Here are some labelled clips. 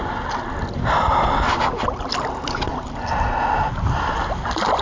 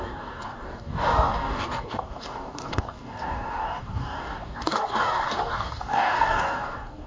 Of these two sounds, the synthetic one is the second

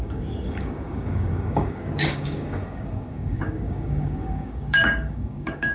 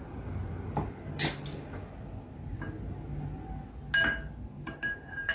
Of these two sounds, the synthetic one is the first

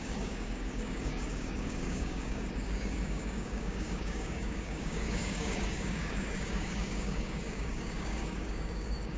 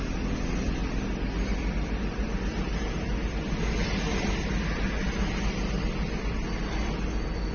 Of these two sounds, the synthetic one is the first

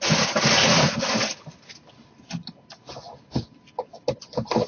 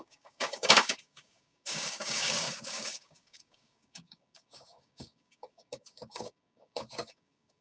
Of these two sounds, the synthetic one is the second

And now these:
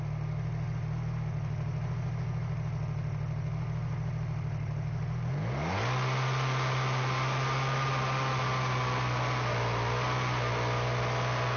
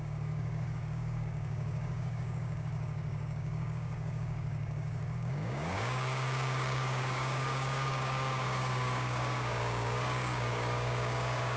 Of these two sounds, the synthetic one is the second